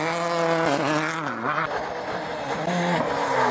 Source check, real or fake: real